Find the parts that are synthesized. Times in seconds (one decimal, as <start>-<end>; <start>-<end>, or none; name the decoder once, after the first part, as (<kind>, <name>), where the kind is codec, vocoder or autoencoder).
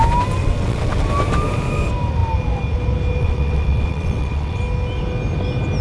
0.4-1.1 (vocoder, WaveNeXt); 3.2-4.6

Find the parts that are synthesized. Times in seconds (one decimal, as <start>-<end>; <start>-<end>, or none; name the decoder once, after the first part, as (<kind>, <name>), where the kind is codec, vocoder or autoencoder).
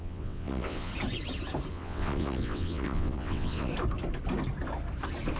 0.0-0.9 (vocoder, WaveNeXt); 1.7-3.7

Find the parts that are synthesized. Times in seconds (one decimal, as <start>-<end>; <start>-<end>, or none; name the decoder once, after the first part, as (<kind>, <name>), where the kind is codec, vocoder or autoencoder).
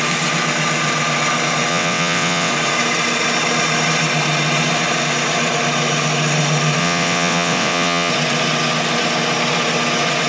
1.7-2.5 (vocoder, WaveNeXt); 6.8-8.1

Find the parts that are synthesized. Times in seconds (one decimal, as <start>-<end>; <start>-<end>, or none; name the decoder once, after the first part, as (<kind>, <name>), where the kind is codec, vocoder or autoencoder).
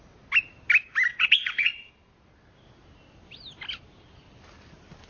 1.1-1.9 (vocoder, WaveNeXt)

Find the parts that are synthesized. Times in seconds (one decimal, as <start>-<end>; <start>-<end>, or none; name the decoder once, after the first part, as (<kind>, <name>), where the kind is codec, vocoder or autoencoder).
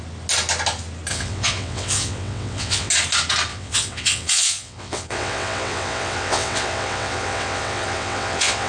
1.1-2.9 (vocoder, WaveNeXt); 3.5-8.7